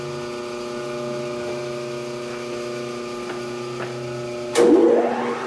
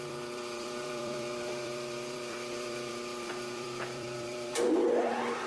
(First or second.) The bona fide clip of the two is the first